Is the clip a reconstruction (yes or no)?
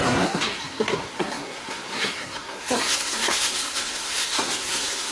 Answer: yes